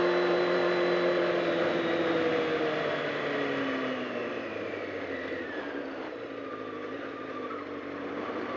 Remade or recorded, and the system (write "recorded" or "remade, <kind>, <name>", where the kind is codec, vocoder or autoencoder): recorded